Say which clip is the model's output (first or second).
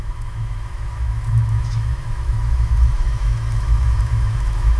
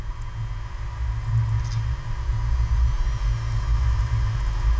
first